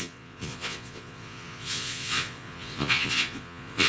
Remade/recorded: remade